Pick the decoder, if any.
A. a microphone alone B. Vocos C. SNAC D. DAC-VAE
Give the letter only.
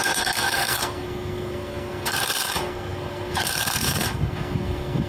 C